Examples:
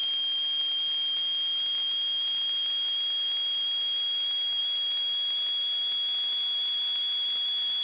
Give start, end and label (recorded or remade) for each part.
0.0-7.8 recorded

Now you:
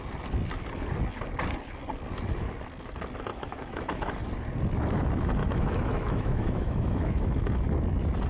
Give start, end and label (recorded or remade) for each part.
0.0-3.3 recorded; 3.3-4.1 remade; 4.1-5.4 recorded; 5.4-7.5 remade; 7.5-8.3 recorded

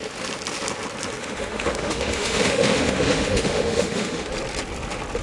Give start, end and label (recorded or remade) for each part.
0.0-1.2 recorded; 1.2-4.3 remade; 4.3-5.2 recorded

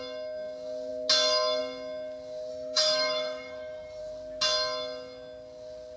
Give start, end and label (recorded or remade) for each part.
0.0-2.5 recorded; 2.5-4.0 remade; 4.0-6.0 recorded